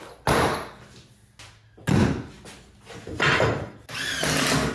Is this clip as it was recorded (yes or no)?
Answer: yes